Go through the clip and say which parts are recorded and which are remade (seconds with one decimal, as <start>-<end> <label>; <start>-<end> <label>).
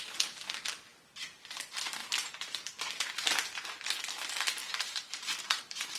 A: 0.0-2.0 recorded; 2.0-4.1 remade; 4.1-4.6 recorded; 4.6-5.6 remade; 5.6-6.0 recorded